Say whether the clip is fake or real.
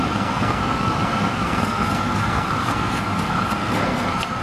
fake